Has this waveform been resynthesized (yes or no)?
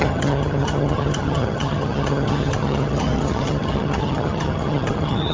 yes